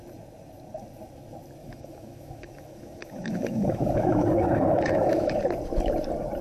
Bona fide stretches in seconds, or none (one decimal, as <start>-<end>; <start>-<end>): 0.0-1.6; 5.4-6.4